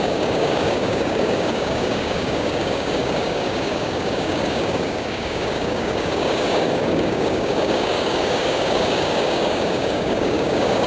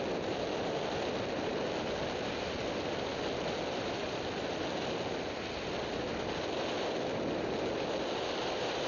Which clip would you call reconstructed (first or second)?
first